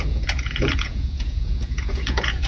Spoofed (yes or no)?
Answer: yes